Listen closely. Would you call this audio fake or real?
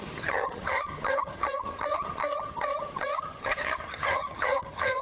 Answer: fake